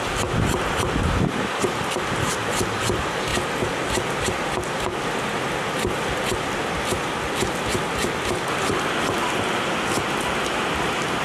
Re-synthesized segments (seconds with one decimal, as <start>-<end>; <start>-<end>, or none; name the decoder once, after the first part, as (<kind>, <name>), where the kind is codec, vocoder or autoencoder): none